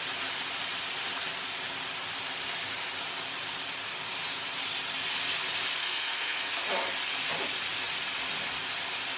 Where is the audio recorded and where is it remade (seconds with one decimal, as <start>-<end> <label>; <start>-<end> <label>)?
0.0-5.8 recorded; 5.8-6.5 remade; 6.5-9.2 recorded